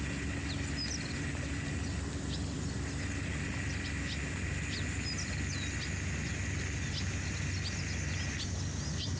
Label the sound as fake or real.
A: real